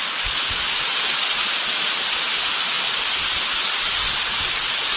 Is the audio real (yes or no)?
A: yes